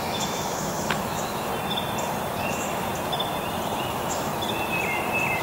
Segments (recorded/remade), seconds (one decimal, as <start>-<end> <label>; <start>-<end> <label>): 0.0-1.5 remade; 1.5-2.5 recorded; 2.5-2.9 remade; 2.9-3.9 recorded; 3.9-4.3 remade; 4.3-5.4 recorded